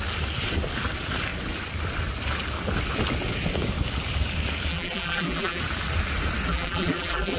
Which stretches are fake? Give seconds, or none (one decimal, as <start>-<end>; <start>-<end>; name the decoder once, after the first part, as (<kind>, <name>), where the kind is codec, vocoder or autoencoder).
4.7-5.6 (vocoder, BigVGAN v2); 6.5-7.4